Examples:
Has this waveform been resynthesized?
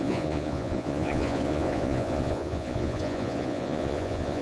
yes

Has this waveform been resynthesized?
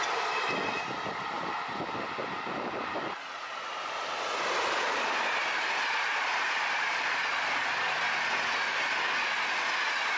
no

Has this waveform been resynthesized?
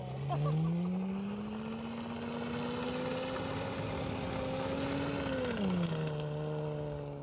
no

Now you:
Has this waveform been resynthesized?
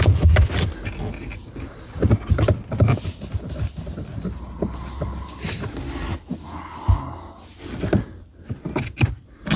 no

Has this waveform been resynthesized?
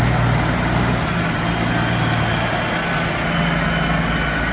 no